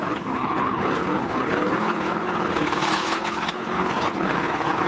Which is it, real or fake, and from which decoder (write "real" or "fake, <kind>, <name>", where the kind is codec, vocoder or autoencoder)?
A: fake, codec, HILCodec